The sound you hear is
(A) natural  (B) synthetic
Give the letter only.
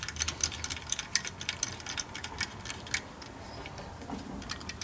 A